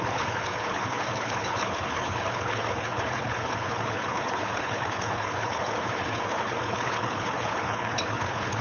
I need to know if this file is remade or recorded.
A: remade